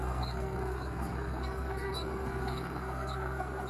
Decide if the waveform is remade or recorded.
remade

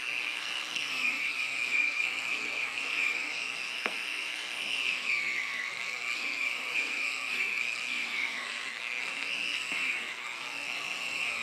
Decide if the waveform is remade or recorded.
remade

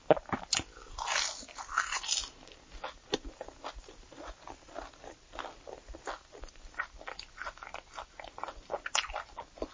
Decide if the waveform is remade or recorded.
recorded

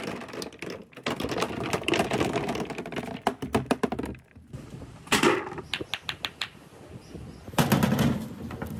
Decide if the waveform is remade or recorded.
recorded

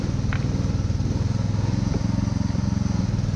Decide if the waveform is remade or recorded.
recorded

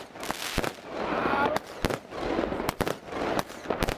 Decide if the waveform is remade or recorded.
recorded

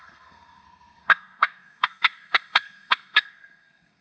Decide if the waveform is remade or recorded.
remade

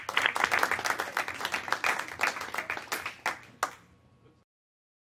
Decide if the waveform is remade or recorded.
recorded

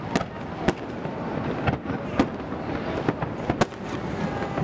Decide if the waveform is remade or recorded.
recorded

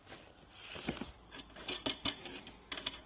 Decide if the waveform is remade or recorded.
recorded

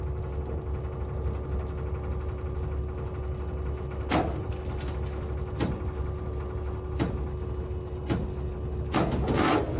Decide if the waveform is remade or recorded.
recorded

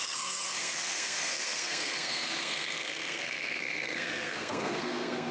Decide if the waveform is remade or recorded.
remade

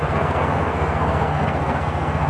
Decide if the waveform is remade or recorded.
remade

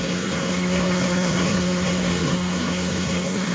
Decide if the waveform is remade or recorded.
remade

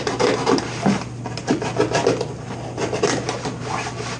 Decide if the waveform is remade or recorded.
recorded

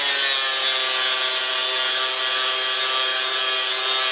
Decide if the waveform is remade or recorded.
recorded